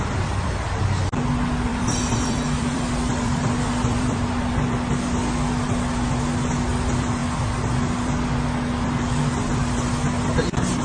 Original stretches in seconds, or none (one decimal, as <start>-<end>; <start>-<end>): 0.0-1.7; 4.4-10.8

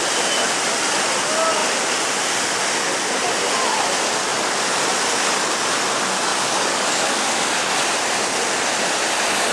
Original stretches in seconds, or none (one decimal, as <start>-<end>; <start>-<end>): 0.0-6.3; 7.6-9.5

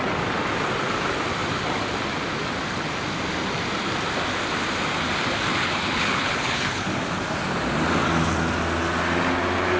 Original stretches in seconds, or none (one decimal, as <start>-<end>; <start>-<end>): 0.0-5.6; 6.9-9.8